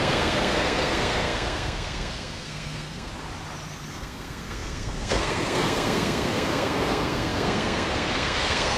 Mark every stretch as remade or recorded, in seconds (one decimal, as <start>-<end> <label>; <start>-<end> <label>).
0.0-3.1 remade; 3.1-3.9 recorded; 3.9-8.8 remade

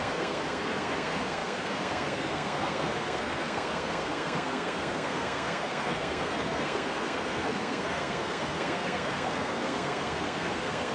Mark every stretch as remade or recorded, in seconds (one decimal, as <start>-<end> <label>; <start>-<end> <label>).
0.0-10.9 remade

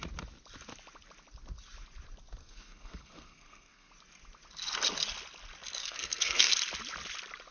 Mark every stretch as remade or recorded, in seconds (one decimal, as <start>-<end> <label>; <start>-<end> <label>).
0.0-2.4 recorded; 2.4-3.9 remade; 3.9-5.8 recorded; 5.8-6.5 remade; 6.5-7.5 recorded